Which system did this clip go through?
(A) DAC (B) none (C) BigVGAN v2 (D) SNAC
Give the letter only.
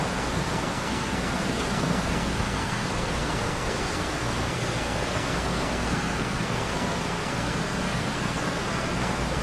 D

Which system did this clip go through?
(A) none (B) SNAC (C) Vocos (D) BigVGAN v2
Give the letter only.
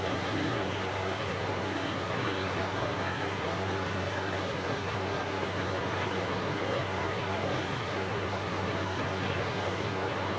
B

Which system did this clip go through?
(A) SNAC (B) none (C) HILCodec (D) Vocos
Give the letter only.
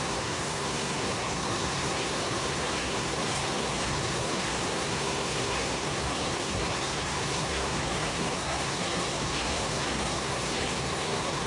A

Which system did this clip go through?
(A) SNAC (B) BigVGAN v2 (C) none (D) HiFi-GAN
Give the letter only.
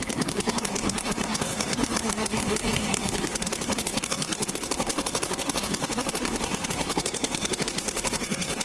A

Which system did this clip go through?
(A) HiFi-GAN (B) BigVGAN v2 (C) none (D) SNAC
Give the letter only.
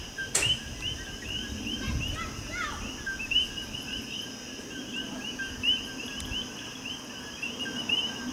C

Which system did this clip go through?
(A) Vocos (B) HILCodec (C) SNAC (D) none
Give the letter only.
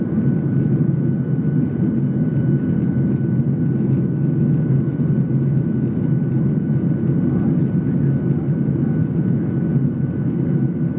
D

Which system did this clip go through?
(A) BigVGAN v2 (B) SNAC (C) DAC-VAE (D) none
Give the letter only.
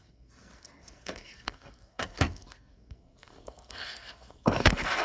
B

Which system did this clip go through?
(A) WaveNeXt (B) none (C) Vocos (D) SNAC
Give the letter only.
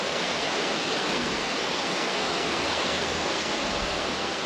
D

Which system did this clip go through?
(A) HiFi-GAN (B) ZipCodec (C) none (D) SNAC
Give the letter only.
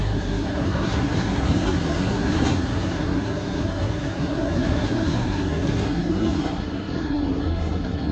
D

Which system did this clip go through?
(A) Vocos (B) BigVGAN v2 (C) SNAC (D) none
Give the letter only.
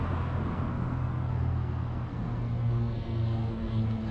C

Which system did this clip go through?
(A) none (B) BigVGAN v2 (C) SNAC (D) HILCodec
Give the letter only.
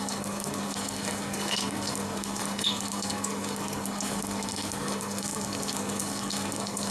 C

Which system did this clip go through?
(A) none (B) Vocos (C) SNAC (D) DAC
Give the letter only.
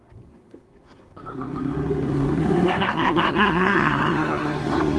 C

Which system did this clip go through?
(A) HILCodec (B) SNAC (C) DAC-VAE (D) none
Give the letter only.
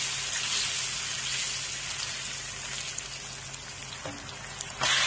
D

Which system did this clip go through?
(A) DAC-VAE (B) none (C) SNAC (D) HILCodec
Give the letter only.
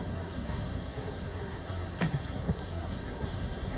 C